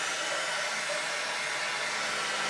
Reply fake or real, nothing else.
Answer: real